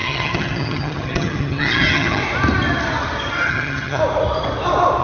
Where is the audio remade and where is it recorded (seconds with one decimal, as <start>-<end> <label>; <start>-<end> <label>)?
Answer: 0.0-2.2 remade; 2.2-3.5 recorded; 3.5-4.0 remade; 4.0-5.0 recorded